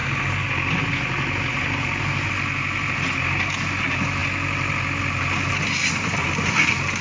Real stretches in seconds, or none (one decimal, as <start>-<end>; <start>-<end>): 0.0-7.0

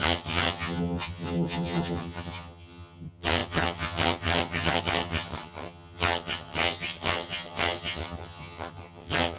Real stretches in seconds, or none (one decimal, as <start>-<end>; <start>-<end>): none

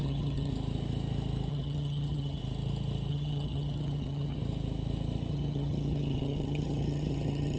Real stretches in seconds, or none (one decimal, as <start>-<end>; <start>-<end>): 0.5-1.5; 2.4-3.1; 4.4-5.3

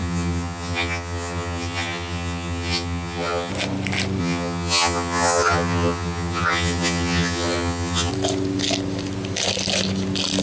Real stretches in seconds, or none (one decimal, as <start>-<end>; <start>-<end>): 3.5-4.2; 8.1-10.4

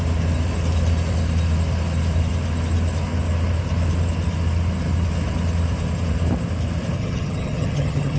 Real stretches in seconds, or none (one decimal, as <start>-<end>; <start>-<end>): 0.0-7.0

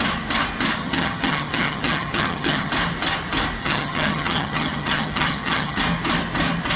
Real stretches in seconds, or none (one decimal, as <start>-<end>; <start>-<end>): 0.0-0.8; 2.7-3.6; 5.8-6.8

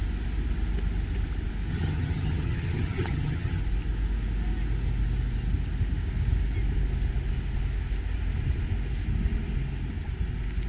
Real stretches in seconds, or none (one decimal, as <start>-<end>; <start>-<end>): 0.0-1.7; 3.6-10.7